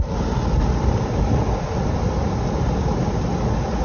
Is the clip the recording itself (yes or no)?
yes